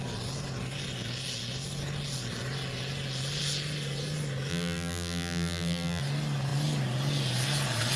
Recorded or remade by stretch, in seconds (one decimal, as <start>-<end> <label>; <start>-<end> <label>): 0.0-4.5 recorded; 4.5-6.0 remade; 6.0-8.0 recorded